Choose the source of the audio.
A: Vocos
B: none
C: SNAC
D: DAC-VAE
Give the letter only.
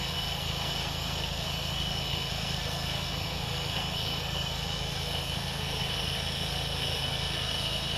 C